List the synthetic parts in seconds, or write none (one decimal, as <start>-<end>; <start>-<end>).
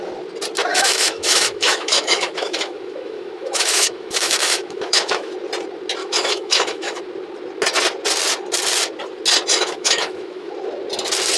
0.7-5.3; 6.0-7.0; 9.5-10.5